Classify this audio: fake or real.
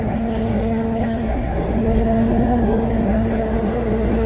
fake